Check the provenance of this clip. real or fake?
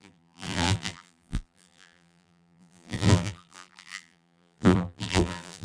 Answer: fake